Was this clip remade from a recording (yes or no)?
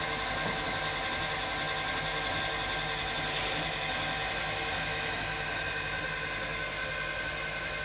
no